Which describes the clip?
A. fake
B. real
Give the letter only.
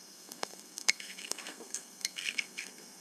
A